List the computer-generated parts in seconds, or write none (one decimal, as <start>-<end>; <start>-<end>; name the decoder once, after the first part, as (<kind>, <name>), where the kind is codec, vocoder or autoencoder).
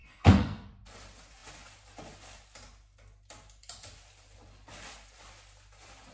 0.0-0.7 (codec, SNAC)